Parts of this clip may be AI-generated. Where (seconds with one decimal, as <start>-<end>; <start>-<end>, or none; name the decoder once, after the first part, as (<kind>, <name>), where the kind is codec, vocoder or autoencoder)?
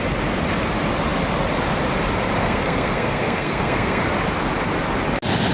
2.4-4.0 (codec, SNAC)